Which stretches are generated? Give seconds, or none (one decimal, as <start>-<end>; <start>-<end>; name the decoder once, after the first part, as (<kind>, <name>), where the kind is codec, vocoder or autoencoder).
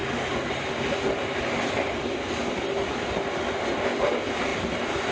none